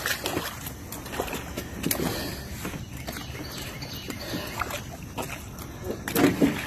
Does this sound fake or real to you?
real